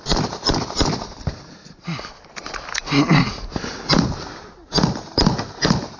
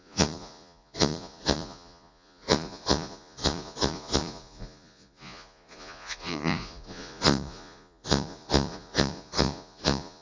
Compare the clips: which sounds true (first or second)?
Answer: first